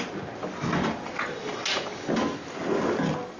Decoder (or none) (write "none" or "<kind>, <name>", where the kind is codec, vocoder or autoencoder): none